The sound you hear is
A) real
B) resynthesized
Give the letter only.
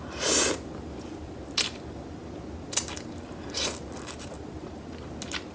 A